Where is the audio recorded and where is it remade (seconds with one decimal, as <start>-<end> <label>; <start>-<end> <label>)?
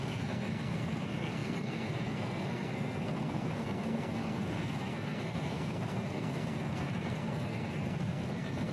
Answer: 0.0-8.7 remade